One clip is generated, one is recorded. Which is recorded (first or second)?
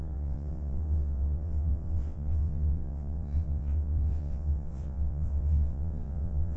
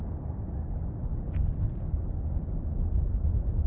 second